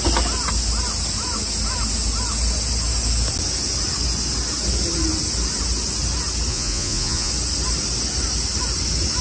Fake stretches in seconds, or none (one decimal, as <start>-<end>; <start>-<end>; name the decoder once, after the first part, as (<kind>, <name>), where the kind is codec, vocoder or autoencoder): 6.5-7.3 (vocoder, Vocos)